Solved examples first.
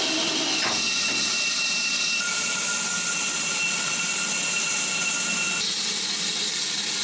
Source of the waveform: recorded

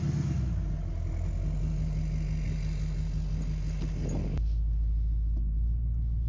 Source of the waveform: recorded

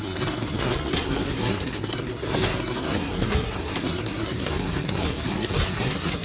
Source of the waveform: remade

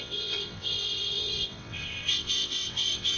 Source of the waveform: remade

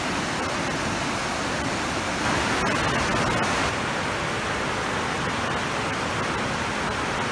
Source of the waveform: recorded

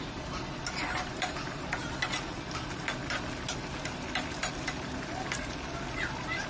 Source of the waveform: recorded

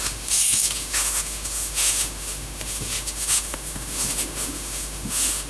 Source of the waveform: remade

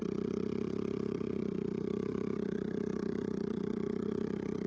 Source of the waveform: remade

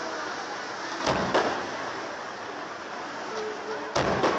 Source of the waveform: recorded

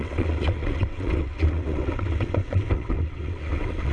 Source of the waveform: remade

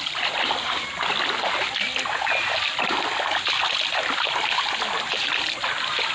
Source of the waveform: recorded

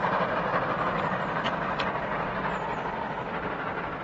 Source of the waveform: remade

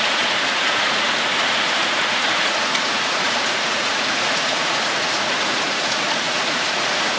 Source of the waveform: remade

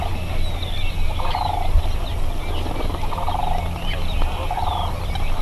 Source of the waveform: recorded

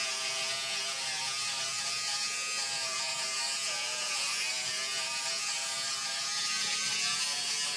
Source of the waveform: remade